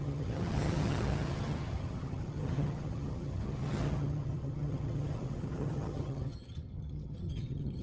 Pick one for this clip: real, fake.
fake